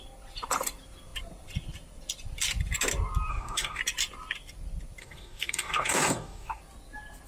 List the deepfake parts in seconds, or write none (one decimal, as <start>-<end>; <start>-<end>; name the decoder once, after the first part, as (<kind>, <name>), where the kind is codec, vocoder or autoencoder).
3.3-3.8 (codec, DAC); 5.0-6.6